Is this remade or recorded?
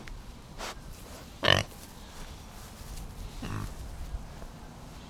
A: recorded